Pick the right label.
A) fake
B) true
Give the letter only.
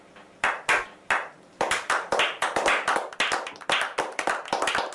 B